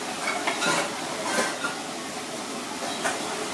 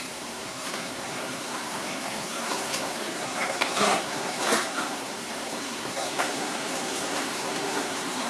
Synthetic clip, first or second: second